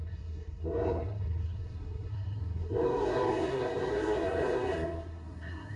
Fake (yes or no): yes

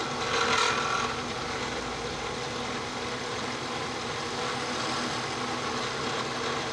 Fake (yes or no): no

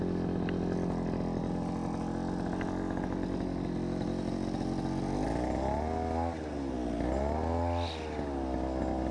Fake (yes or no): no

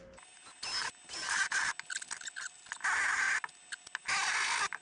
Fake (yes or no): no